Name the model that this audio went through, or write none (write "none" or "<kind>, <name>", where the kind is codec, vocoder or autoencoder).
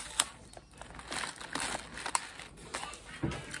none